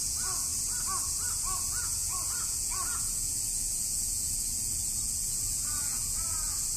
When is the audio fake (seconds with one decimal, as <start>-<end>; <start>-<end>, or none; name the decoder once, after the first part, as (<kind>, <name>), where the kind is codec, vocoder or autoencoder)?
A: 0.0-0.5 (vocoder, Vocos); 1.6-6.8